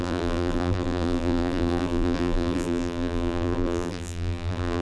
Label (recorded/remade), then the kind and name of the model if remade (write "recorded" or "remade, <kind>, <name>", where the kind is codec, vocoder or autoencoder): remade, vocoder, BigVGAN v2